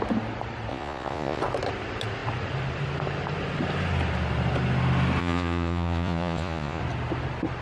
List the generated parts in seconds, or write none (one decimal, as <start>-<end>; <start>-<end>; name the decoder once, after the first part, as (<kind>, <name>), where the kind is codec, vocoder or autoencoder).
0.7-1.4 (vocoder, Vocos); 5.2-6.8